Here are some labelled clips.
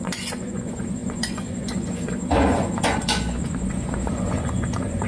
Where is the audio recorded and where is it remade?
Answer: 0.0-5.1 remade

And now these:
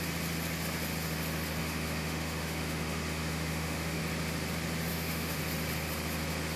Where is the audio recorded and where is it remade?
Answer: 0.0-1.6 recorded; 1.6-4.0 remade; 4.0-4.9 recorded; 4.9-5.4 remade; 5.4-6.6 recorded

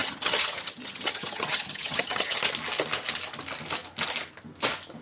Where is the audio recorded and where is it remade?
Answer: 0.0-2.4 remade; 2.4-5.0 recorded

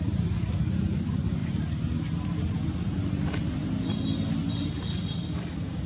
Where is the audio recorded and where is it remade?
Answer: 0.0-1.4 recorded; 1.4-3.1 remade; 3.1-5.9 recorded

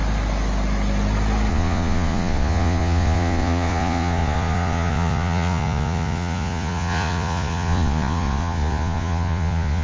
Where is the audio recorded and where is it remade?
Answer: 0.0-1.5 recorded; 1.5-9.8 remade

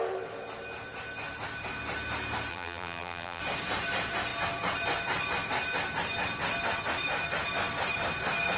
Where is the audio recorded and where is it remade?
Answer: 0.0-2.5 recorded; 2.5-3.4 remade; 3.4-8.6 recorded

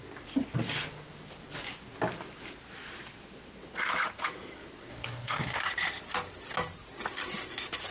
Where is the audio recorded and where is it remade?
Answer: 0.0-4.9 recorded; 4.9-5.6 remade; 5.6-7.9 recorded